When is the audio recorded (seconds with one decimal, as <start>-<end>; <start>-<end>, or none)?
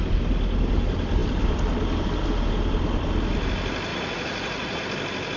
0.0-3.9; 4.8-5.4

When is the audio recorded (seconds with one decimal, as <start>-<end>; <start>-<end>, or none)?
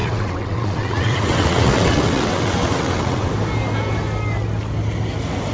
3.3-5.5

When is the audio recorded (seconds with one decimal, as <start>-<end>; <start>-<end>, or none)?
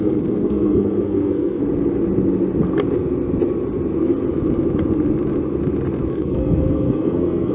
1.6-6.1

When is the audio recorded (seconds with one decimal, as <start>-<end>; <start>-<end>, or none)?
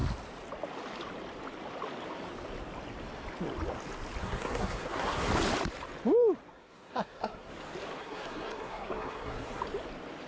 0.0-4.2; 5.3-6.5; 7.5-8.0; 9.6-10.3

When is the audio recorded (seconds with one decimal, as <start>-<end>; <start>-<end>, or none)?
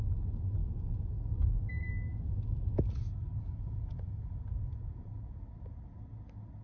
0.0-0.6; 1.2-2.1; 5.4-6.6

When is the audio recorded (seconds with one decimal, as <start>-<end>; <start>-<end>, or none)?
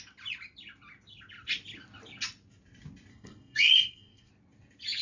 0.0-3.1; 4.3-5.0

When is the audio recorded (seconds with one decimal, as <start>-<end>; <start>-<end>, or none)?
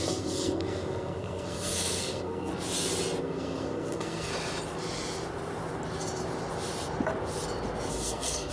2.5-3.2; 4.3-7.9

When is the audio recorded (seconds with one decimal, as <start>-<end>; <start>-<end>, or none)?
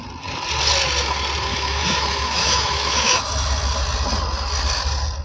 0.0-1.5; 3.2-5.2